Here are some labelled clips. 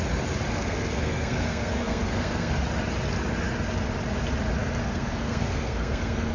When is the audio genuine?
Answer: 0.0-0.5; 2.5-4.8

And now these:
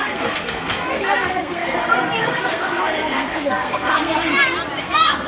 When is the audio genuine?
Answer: 4.3-4.8

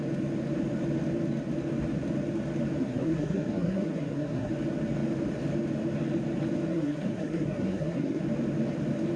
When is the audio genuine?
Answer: 0.0-2.8; 4.5-6.7; 8.2-9.2

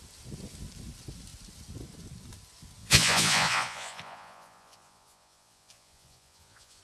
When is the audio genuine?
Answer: 0.0-2.8

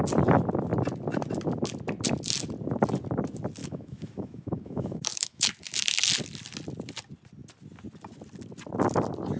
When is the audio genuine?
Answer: 0.0-3.6; 5.5-9.4

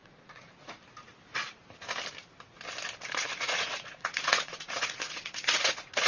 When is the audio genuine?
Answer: 0.8-3.2